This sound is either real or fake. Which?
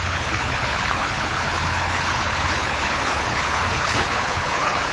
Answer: fake